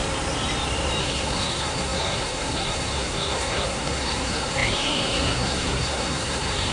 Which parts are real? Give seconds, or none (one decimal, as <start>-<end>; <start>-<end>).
0.0-1.0